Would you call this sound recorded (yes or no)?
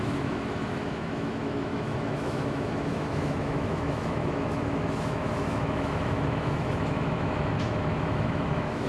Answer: no